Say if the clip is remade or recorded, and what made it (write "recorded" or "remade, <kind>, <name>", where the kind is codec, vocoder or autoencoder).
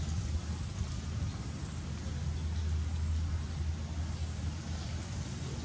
recorded